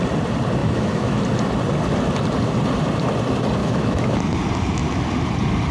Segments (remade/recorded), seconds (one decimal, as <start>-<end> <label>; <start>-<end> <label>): 0.0-0.6 recorded; 0.6-1.2 remade; 1.2-3.6 recorded; 3.6-4.2 remade; 4.2-5.7 recorded

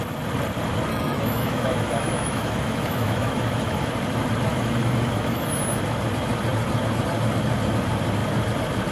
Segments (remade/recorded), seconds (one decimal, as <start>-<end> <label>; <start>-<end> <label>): 0.0-0.9 recorded; 0.9-3.9 remade; 3.9-4.5 recorded; 4.5-5.5 remade; 5.5-8.9 recorded

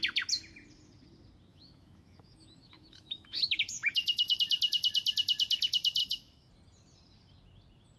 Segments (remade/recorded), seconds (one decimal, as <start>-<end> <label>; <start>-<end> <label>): 0.0-1.5 recorded; 1.5-4.4 remade; 4.4-6.0 recorded; 6.0-6.5 remade; 6.5-8.0 recorded